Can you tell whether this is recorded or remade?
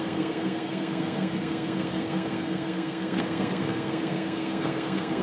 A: remade